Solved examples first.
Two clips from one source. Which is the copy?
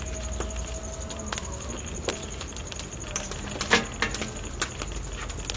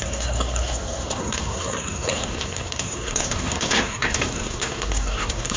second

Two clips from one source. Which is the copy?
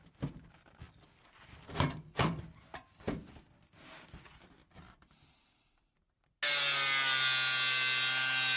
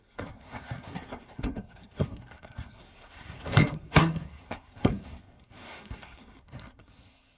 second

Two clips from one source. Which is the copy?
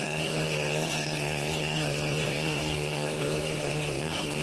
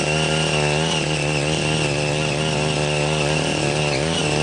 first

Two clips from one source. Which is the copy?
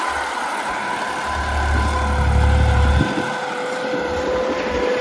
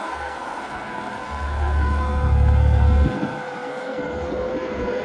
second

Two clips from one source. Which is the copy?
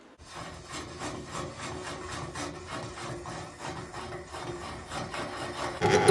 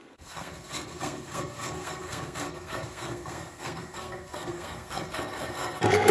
second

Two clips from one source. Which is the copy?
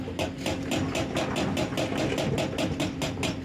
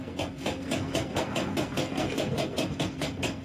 second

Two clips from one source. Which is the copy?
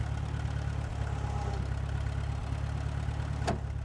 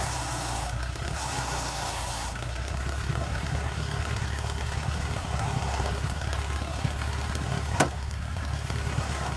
second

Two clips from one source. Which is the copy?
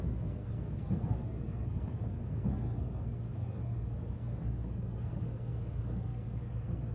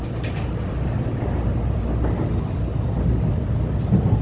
first